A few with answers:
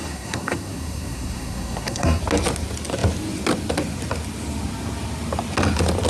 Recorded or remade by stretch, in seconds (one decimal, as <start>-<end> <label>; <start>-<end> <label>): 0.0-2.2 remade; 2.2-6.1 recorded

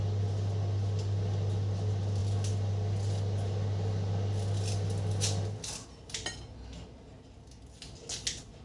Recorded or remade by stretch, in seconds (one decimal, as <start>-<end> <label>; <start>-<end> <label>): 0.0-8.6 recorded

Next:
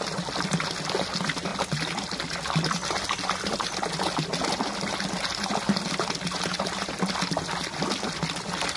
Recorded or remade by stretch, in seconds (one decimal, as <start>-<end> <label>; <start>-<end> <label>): 0.0-8.8 recorded

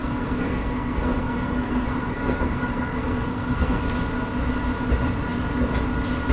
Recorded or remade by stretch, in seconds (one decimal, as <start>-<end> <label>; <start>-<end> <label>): 0.0-3.8 remade; 3.8-6.3 recorded

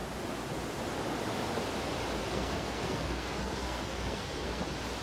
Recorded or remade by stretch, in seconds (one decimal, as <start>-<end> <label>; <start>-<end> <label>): 0.0-2.2 recorded; 2.2-4.6 remade; 4.6-5.0 recorded

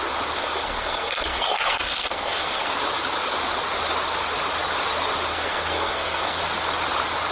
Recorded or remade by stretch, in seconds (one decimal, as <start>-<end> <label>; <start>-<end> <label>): 0.0-0.4 recorded; 0.4-2.7 remade; 2.7-5.3 recorded; 5.3-6.4 remade; 6.4-7.3 recorded

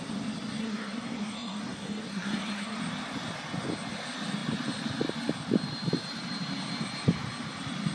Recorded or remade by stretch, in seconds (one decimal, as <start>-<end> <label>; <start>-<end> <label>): 0.0-0.6 recorded; 0.6-2.8 remade; 2.8-7.9 recorded

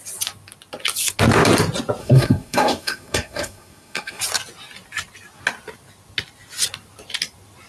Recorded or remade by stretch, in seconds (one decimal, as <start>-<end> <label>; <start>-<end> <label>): 0.0-2.0 recorded; 2.0-4.2 remade; 4.2-7.7 recorded